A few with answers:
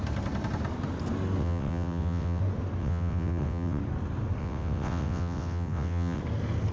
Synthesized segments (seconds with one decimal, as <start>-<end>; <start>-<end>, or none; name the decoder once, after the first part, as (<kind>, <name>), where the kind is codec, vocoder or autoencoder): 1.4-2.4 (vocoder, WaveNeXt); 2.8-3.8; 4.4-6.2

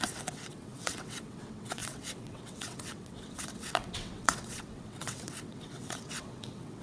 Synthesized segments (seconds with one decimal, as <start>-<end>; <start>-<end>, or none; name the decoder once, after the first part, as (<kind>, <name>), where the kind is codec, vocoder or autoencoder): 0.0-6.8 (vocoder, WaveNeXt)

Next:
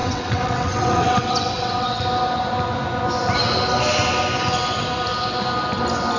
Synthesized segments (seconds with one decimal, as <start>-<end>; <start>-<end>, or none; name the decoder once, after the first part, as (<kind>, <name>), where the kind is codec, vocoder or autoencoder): 0.0-2.0 (vocoder, WaveNeXt)